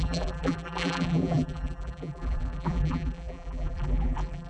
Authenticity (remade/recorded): remade